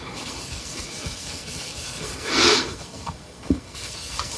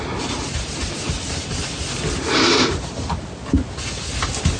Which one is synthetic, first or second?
first